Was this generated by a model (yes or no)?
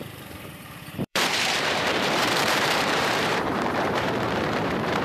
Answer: yes